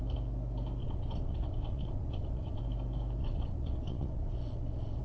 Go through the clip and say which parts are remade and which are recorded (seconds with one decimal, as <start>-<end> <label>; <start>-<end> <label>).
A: 0.0-0.8 recorded; 0.8-2.6 remade; 2.6-3.2 recorded; 3.2-5.0 remade